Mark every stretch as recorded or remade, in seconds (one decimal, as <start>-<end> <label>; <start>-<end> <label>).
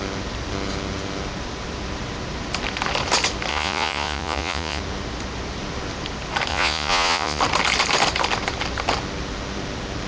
0.0-3.5 recorded; 3.5-4.8 remade; 4.8-6.5 recorded; 6.5-7.4 remade; 7.4-10.1 recorded